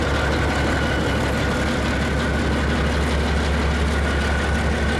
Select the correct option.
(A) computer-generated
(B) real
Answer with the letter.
B